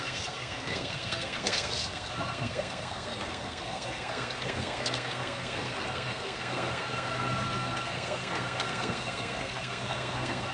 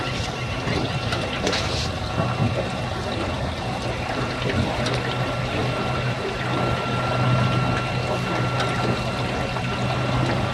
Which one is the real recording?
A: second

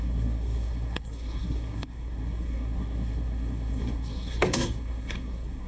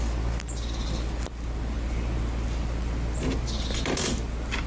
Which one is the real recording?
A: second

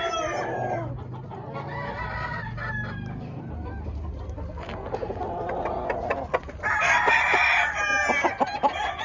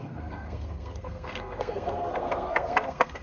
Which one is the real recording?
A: first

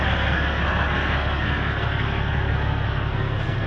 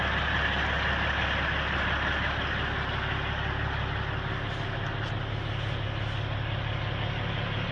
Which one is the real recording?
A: second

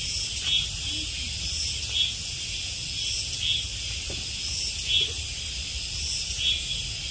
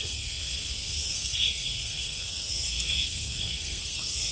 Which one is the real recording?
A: first